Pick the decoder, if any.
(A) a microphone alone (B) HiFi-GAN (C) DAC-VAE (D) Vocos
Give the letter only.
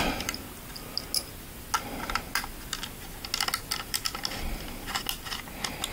A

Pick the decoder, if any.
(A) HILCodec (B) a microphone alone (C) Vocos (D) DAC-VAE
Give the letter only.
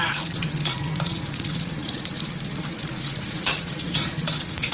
C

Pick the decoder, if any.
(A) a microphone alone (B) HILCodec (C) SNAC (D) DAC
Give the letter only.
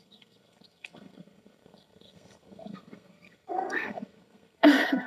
C